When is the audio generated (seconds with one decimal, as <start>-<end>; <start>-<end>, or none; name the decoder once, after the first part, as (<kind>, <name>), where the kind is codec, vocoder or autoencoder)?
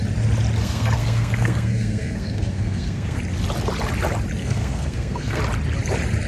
0.6-3.2 (codec, SNAC); 4.4-5.4